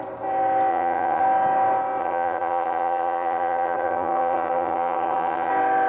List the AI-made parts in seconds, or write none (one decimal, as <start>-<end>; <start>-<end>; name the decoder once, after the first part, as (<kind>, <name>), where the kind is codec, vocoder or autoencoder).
0.7-1.2 (vocoder, HiFi-GAN); 2.0-5.5